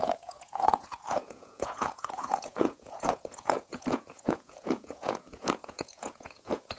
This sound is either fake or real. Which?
fake